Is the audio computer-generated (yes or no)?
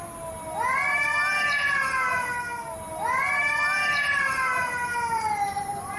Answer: no